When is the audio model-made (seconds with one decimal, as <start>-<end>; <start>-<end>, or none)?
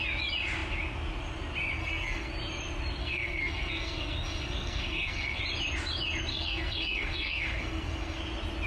1.8-2.3; 3.0-5.4; 6.3-8.2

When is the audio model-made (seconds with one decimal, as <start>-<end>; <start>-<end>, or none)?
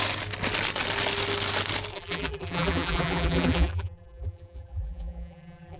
1.9-5.8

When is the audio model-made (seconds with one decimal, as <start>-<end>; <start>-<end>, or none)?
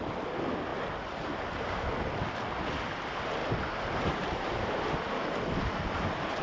3.4-4.7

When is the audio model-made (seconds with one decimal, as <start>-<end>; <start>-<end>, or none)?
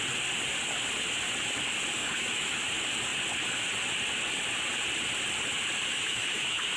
2.0-2.6; 5.9-6.8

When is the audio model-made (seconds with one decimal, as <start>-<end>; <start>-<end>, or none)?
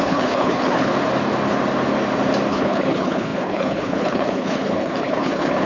0.0-0.9; 2.5-5.7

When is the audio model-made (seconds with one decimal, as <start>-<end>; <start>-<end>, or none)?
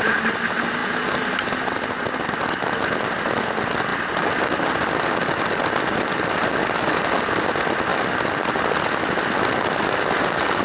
none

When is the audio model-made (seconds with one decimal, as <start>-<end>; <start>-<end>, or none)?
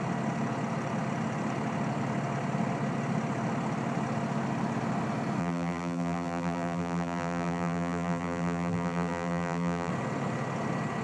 5.4-9.9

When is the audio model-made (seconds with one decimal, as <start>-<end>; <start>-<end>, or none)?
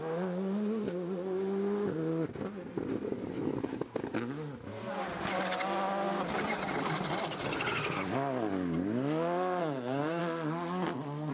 9.6-10.2